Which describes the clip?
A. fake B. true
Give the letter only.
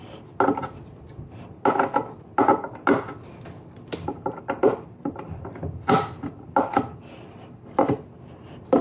B